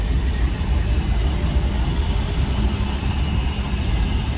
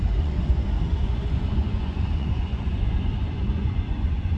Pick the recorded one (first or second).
first